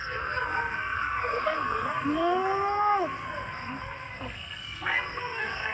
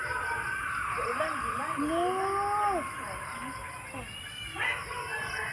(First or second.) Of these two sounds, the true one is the second